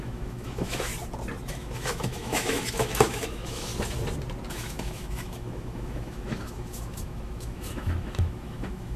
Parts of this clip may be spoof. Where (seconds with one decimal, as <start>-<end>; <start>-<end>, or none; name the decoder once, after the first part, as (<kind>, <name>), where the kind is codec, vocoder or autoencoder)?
0.0-0.9 (autoencoder, DAC-VAE); 1.5-3.7; 4.5-9.0